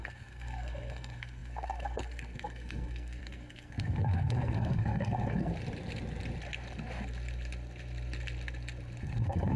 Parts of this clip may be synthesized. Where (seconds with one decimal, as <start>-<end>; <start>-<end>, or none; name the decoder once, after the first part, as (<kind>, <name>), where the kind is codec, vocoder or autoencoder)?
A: 0.0-5.5 (codec, SNAC); 9.0-9.6